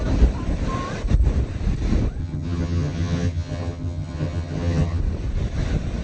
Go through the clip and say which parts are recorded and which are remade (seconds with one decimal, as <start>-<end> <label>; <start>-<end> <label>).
0.0-2.2 recorded; 2.2-5.0 remade; 5.0-6.0 recorded

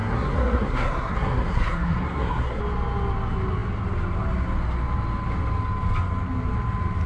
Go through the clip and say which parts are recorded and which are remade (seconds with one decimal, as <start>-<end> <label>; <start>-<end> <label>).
0.0-2.6 remade; 2.6-7.1 recorded

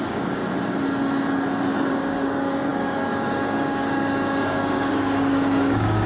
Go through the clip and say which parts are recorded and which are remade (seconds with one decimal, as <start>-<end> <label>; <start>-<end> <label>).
0.0-0.4 remade; 0.4-1.9 recorded; 1.9-6.1 remade

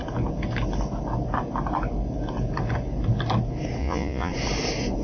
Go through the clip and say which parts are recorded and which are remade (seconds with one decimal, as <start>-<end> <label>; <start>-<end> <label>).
0.0-3.8 recorded; 3.8-4.3 remade; 4.3-5.0 recorded

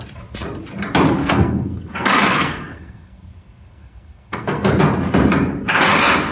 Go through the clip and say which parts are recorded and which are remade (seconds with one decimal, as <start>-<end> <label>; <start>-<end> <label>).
0.0-1.2 recorded; 1.2-4.7 remade; 4.7-6.3 recorded

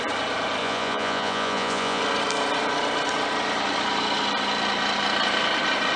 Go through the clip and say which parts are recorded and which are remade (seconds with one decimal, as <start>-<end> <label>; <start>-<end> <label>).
0.0-0.6 recorded; 0.6-2.0 remade; 2.0-6.0 recorded